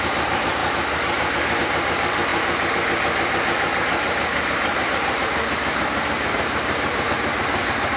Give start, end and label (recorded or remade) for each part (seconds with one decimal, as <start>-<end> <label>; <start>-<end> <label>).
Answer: 0.0-0.6 remade; 0.6-1.6 recorded; 1.6-8.0 remade